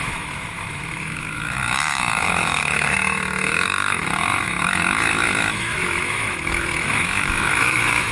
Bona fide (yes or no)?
no